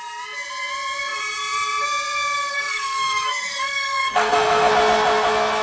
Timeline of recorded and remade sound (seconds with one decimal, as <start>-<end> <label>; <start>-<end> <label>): 0.0-2.5 recorded; 2.5-4.7 remade; 4.7-5.6 recorded